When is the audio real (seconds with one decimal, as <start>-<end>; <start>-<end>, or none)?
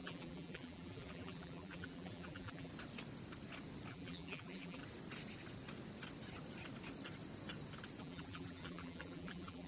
2.7-3.9; 4.8-8.0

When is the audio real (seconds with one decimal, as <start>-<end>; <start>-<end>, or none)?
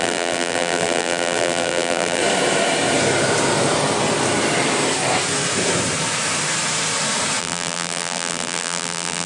2.2-7.4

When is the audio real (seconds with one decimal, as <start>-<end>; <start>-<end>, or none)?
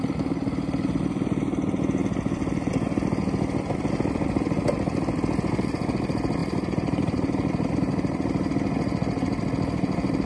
0.0-6.4; 7.7-10.3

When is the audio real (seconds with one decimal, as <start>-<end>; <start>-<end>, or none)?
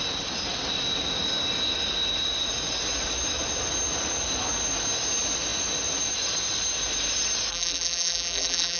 0.0-7.5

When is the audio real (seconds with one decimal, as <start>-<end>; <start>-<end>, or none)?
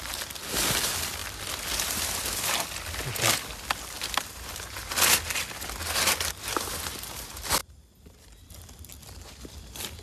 0.0-7.6; 8.5-10.0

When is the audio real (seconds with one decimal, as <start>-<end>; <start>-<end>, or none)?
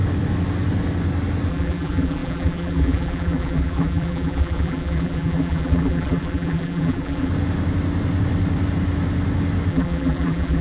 0.0-1.5; 7.3-9.7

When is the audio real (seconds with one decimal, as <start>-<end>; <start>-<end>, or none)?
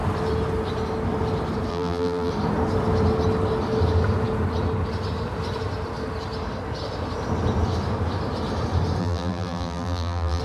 0.0-1.7; 2.3-9.0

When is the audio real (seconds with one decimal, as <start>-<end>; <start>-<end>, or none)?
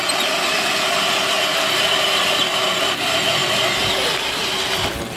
0.0-1.5; 2.6-3.4; 4.2-5.2